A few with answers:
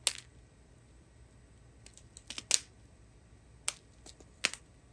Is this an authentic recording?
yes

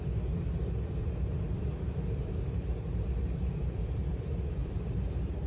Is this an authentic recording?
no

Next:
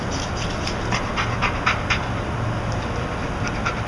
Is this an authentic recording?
yes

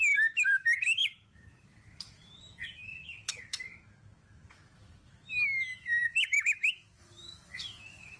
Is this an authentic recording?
no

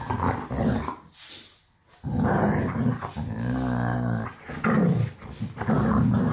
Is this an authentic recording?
yes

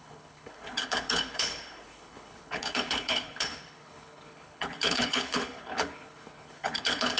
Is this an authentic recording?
no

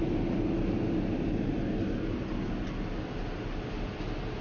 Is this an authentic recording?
yes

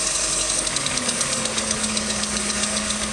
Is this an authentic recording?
no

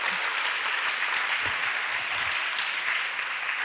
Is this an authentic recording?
yes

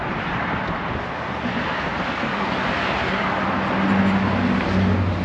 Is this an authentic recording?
yes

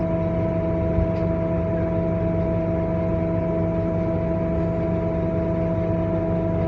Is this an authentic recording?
yes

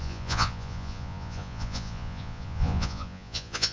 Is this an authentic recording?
no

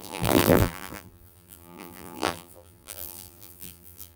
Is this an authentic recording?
no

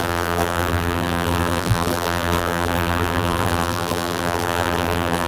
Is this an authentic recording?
no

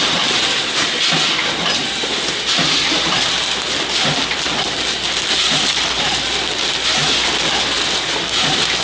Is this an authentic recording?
yes